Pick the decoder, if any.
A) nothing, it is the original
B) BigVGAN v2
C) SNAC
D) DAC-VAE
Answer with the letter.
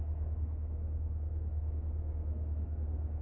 C